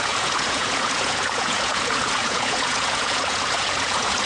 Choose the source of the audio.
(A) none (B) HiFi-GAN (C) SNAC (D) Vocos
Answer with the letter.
D